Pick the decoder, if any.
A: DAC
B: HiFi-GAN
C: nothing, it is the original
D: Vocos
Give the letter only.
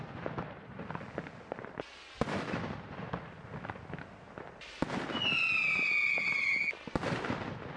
C